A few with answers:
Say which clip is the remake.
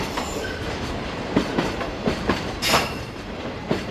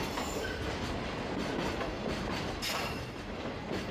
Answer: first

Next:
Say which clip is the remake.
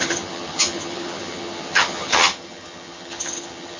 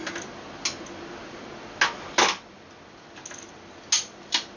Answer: first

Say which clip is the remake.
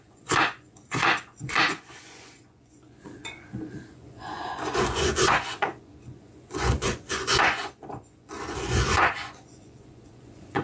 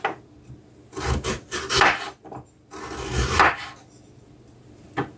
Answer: first